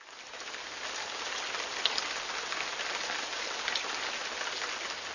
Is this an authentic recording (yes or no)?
yes